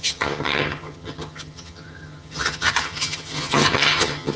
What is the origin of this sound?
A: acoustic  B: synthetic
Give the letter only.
B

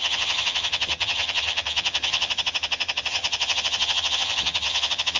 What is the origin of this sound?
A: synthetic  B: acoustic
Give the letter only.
A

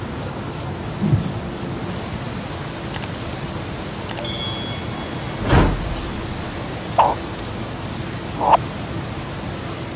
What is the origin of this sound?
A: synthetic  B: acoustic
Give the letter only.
B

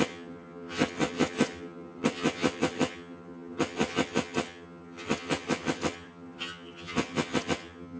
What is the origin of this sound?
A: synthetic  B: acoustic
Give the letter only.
A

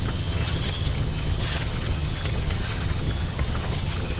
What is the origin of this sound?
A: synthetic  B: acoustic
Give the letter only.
A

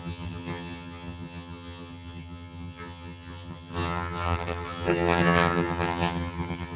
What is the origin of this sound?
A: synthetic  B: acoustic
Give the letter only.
A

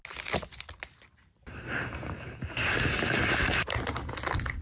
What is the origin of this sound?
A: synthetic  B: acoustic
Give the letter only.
B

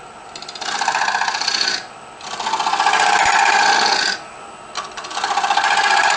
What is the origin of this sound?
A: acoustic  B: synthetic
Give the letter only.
A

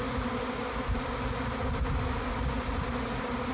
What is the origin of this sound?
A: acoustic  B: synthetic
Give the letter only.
A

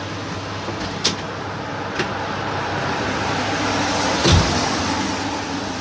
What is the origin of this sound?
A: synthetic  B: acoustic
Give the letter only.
B